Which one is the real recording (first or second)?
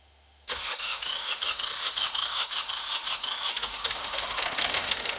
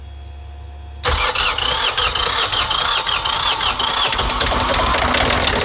second